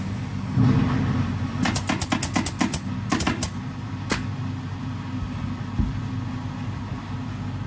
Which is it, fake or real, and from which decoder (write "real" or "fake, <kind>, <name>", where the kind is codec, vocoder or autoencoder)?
real